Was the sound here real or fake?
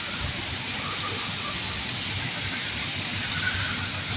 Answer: real